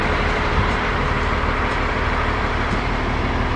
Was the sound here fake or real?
fake